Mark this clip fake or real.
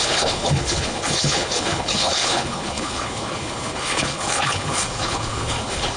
fake